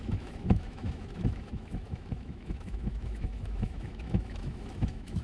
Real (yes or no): no